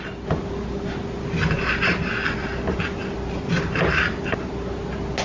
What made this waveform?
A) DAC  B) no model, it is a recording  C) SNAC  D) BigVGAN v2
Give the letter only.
B